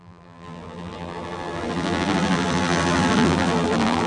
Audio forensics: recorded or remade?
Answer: remade